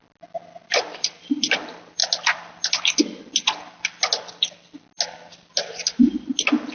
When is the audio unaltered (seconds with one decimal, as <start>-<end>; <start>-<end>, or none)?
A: 0.0-6.7